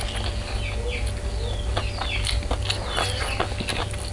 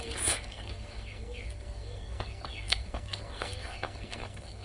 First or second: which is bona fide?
first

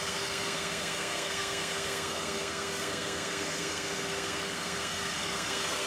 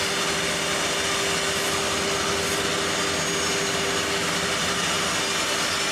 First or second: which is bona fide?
second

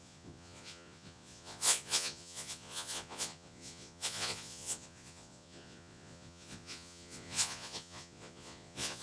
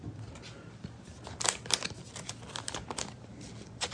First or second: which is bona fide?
second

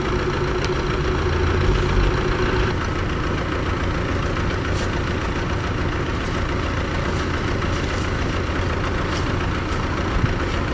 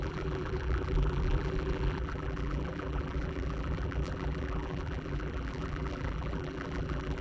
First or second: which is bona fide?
first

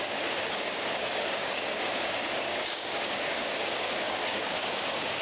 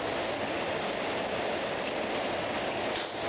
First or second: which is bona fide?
second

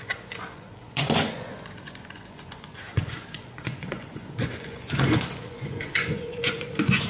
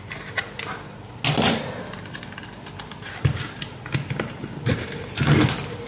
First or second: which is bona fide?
second